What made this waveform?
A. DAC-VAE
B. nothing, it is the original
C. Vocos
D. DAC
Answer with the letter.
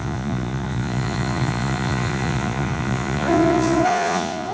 C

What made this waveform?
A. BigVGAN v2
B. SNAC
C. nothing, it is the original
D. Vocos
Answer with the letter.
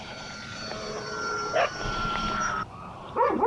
A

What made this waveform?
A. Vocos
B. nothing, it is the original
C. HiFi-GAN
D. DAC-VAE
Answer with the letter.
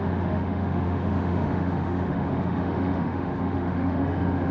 D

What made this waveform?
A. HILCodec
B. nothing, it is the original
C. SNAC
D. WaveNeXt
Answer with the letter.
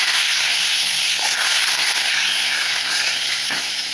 C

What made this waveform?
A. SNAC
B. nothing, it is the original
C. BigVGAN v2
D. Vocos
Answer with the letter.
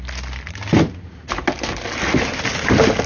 B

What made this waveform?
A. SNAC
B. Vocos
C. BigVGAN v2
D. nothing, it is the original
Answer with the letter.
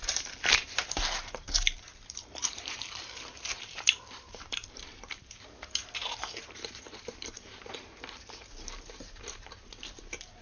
C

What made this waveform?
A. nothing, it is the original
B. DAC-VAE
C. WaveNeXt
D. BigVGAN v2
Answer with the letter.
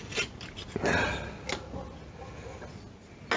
A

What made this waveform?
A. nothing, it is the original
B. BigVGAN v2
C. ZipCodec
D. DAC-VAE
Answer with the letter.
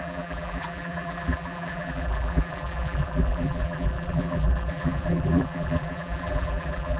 B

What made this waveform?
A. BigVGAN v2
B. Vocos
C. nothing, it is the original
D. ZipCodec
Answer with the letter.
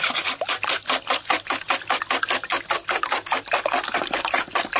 C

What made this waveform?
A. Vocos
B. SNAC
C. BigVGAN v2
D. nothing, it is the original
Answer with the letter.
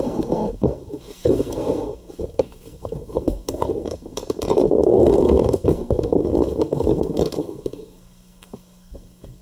B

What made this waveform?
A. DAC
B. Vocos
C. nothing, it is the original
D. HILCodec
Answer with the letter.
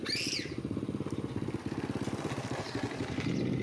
C